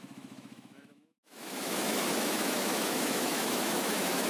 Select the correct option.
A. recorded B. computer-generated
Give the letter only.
B